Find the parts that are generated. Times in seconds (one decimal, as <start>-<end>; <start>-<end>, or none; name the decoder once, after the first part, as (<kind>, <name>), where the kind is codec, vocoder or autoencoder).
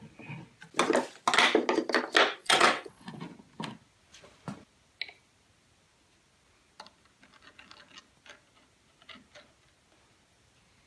2.4-3.2 (vocoder, WaveNeXt)